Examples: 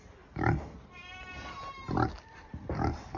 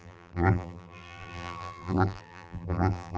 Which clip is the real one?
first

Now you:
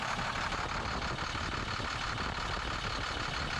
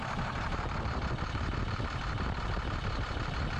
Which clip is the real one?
first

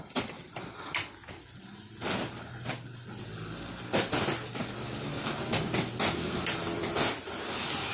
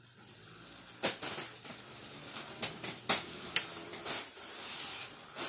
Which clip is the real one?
first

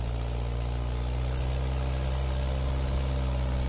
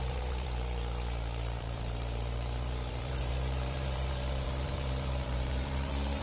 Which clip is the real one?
first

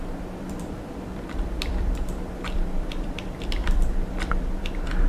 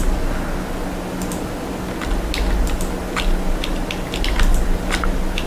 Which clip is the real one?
second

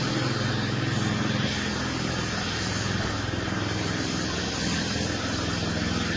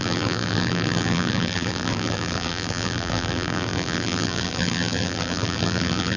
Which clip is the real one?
first